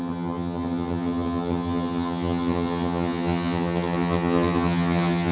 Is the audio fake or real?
fake